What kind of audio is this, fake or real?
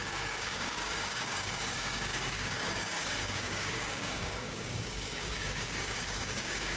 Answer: fake